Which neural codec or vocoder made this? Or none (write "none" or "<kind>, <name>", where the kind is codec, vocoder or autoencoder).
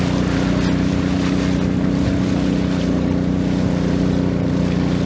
none